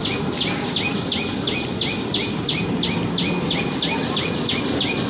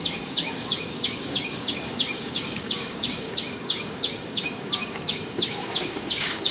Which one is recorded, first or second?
first